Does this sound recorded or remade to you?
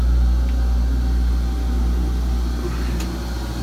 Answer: recorded